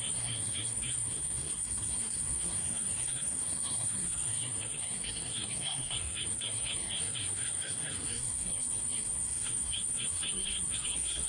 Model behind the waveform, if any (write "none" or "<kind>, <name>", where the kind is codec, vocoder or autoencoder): codec, SNAC